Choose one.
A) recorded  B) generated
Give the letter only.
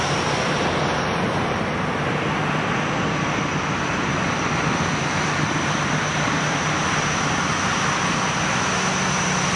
A